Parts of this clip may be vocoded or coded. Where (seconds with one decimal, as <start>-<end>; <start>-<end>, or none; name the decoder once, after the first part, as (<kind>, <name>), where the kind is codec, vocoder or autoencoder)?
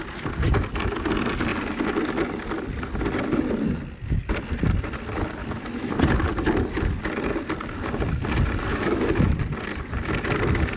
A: 5.4-5.9 (autoencoder, DAC-VAE); 8.7-9.3